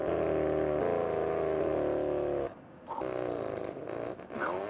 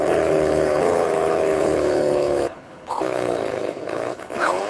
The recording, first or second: first